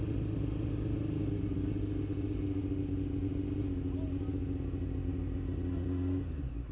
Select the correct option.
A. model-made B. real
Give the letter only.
B